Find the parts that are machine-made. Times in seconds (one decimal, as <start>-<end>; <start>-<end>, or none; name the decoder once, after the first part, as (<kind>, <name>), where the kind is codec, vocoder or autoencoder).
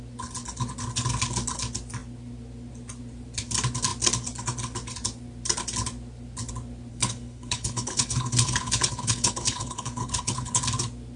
6.9-10.6 (codec, HILCodec)